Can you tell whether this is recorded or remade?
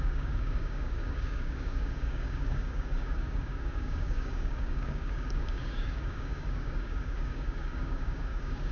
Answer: remade